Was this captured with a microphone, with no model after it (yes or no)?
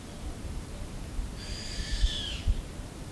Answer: no